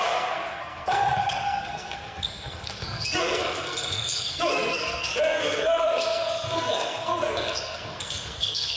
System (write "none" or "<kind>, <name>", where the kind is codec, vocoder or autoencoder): codec, SNAC